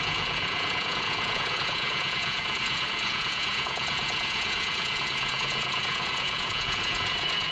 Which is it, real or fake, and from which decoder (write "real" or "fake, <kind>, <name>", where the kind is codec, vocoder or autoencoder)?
fake, vocoder, Vocos